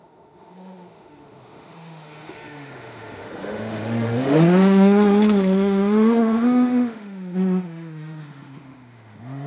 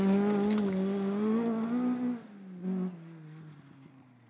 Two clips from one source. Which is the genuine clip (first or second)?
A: second